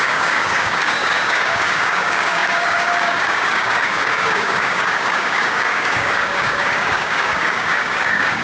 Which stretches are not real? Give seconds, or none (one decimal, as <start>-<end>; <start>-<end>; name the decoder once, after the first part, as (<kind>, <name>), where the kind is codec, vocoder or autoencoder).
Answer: 0.0-8.4 (codec, DAC)